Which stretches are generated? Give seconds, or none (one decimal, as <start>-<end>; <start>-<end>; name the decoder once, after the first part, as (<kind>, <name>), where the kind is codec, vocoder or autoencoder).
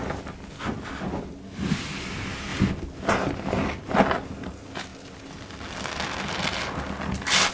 none